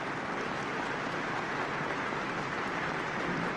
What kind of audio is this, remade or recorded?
recorded